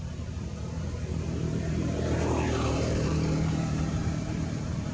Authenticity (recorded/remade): remade